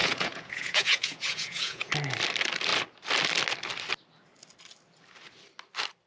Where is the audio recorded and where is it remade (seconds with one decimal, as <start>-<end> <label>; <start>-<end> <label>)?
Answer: 0.0-1.9 remade; 1.9-6.1 recorded